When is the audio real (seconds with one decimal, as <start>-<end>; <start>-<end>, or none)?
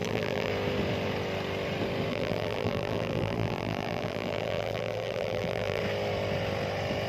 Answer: 0.5-2.1; 5.8-7.1